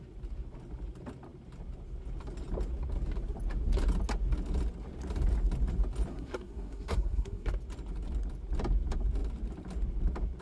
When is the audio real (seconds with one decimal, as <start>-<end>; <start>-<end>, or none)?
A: 0.0-6.1; 7.5-10.4